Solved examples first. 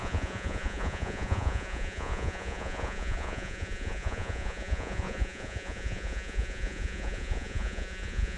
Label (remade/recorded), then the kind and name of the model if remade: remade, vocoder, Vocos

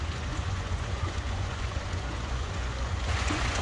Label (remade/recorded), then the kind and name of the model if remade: remade, vocoder, Vocos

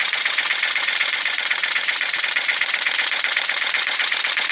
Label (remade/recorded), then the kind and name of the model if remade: remade, vocoder, Vocos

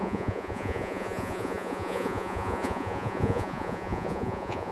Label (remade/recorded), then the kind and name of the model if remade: remade, vocoder, Vocos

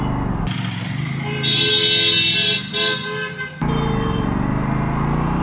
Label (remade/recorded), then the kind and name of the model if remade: recorded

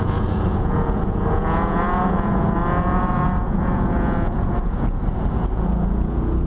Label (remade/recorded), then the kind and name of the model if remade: remade, vocoder, Vocos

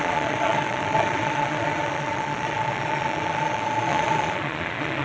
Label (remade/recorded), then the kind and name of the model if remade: remade, vocoder, Vocos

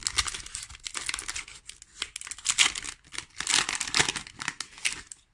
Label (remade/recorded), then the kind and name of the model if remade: recorded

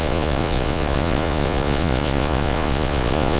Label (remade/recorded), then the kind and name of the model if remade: remade, vocoder, Vocos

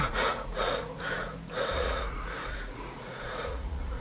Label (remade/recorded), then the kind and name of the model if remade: remade, vocoder, Vocos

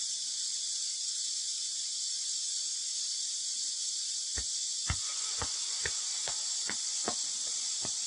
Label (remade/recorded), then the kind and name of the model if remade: remade, vocoder, Vocos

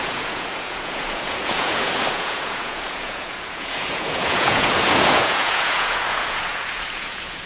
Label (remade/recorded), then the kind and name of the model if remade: remade, vocoder, Vocos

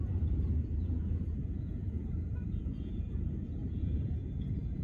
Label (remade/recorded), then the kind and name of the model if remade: remade, vocoder, Vocos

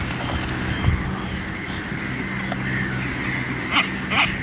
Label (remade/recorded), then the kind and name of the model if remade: recorded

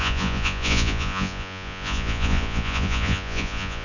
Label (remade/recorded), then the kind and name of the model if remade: remade, vocoder, Vocos